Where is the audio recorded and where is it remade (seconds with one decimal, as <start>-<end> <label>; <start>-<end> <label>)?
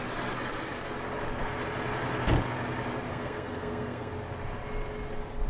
0.0-3.1 recorded; 3.1-4.1 remade; 4.1-5.5 recorded